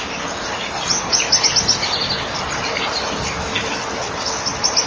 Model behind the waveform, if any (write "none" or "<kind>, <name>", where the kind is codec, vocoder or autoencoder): none